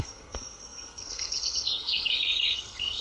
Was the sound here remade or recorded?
remade